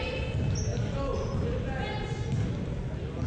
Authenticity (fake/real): real